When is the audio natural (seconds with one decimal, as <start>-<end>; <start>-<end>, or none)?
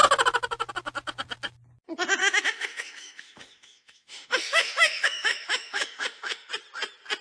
0.0-2.2; 6.5-7.2